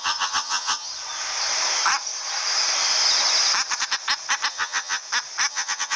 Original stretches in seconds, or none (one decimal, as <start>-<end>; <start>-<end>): 0.9-4.5; 5.0-5.5